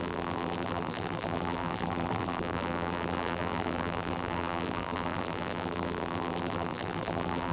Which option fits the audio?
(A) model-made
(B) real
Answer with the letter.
A